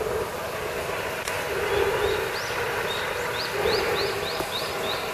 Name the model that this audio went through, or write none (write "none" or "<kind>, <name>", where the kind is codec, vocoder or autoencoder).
none